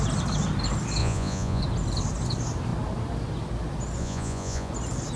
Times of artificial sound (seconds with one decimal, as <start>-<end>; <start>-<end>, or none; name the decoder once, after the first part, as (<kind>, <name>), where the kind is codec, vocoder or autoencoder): 1.0-1.6 (vocoder, Vocos); 4.0-4.7